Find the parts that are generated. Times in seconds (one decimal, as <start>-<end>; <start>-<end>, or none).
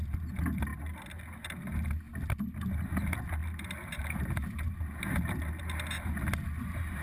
3.4-4.7